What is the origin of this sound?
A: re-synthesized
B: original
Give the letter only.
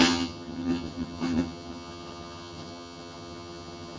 A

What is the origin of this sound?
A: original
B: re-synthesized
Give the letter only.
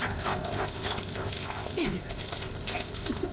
B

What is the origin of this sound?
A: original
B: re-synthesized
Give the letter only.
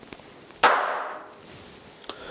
A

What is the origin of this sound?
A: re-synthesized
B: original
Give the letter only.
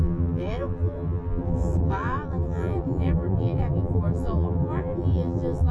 A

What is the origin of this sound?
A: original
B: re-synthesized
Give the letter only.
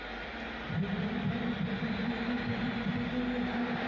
A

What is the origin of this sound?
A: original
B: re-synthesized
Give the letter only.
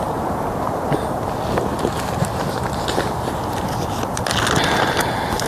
A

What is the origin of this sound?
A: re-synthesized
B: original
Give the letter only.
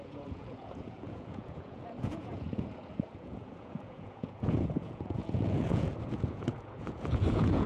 A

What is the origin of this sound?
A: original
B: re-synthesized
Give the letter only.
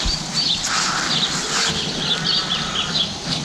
A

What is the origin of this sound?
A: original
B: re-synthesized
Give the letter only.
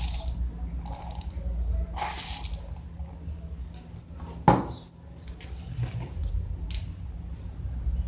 A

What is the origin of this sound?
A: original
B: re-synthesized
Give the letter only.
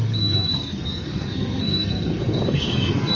B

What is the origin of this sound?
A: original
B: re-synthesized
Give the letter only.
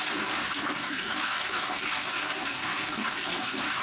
B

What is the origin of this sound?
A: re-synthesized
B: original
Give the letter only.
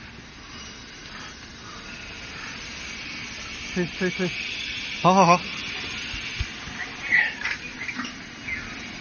B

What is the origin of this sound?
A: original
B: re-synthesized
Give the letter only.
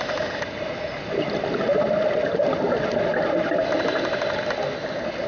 A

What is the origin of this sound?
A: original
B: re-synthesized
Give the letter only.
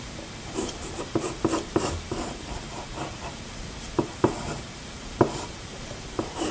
B